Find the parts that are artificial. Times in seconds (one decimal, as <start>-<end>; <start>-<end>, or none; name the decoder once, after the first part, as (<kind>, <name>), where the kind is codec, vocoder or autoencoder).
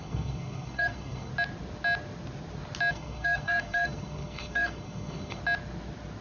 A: 0.0-1.3 (codec, SNAC); 2.9-5.4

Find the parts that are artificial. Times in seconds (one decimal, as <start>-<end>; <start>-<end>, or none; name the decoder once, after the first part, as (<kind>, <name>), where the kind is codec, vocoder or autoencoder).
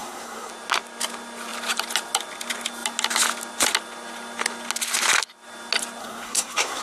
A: 0.0-0.5 (codec, SNAC); 6.0-6.8